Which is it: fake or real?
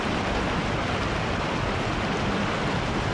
real